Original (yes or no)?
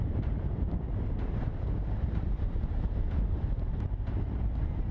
no